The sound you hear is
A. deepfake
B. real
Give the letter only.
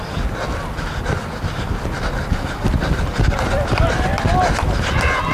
B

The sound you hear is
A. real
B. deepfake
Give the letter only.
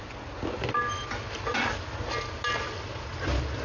A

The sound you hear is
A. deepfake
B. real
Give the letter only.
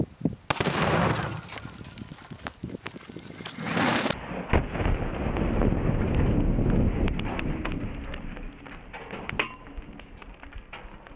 B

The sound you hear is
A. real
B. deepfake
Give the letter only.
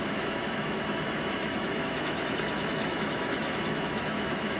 B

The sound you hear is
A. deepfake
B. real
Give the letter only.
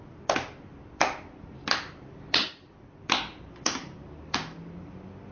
A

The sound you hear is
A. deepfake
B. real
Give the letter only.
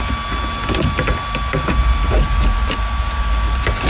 B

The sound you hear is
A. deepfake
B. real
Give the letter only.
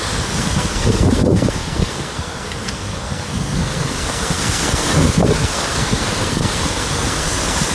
A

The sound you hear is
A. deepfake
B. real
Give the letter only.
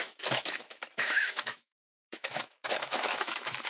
A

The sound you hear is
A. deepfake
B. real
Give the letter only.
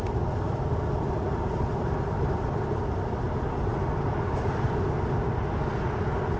B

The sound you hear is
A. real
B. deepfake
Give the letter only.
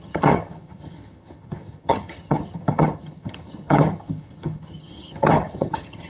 B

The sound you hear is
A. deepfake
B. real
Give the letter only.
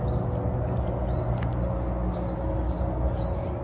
B